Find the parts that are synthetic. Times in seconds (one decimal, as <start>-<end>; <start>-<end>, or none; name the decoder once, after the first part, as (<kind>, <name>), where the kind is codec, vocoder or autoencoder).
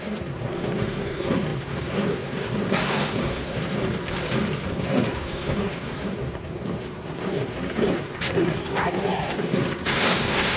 0.0-3.8 (codec, SNAC); 4.7-10.6